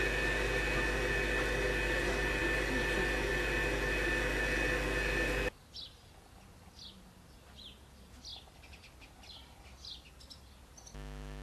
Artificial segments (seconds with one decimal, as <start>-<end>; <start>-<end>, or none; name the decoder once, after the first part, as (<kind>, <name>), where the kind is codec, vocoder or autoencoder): none